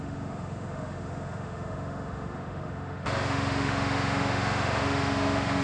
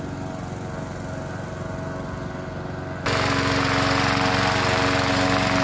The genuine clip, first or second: second